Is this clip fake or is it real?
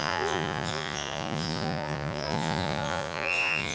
fake